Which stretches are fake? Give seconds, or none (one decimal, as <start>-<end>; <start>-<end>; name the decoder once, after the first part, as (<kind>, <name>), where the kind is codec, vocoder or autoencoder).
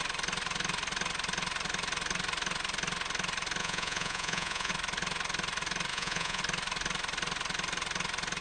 3.6-4.7 (vocoder, Vocos); 5.9-6.4